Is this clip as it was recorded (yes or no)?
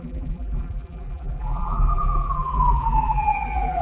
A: no